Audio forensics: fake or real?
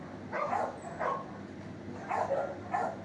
real